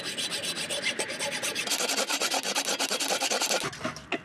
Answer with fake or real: real